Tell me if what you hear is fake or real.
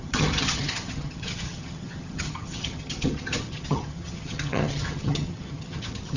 fake